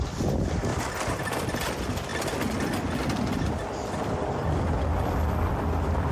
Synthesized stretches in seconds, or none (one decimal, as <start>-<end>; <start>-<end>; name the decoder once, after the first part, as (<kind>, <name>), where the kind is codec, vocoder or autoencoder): 0.0-2.1 (vocoder, BigVGAN v2); 5.5-6.1

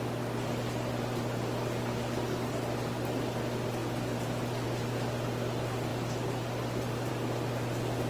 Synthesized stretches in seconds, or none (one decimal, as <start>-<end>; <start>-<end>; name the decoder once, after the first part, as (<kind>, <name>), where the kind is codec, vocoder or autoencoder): none